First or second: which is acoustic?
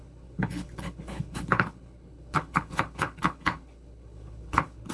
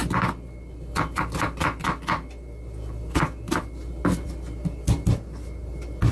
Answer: second